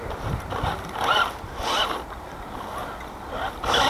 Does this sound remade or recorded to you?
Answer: recorded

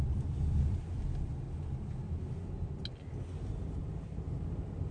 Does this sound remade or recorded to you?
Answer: recorded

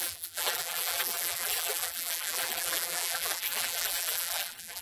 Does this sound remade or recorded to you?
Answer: remade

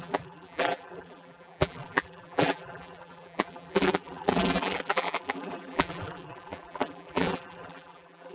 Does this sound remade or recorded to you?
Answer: remade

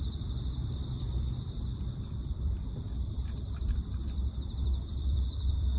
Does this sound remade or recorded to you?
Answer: remade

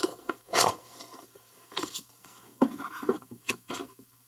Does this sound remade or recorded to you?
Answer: remade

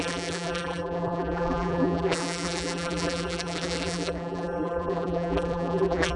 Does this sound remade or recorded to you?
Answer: remade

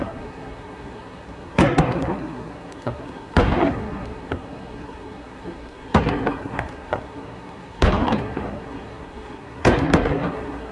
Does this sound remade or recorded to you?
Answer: remade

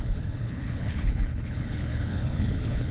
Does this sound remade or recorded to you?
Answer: remade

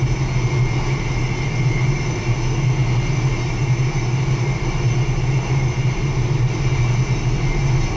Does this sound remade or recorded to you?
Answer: recorded